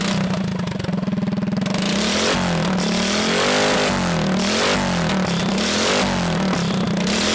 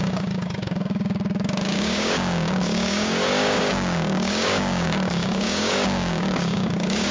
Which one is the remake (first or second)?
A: second